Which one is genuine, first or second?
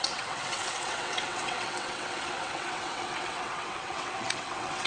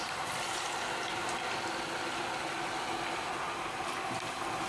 second